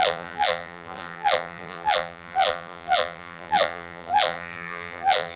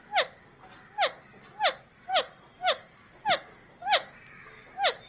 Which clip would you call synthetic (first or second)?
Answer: first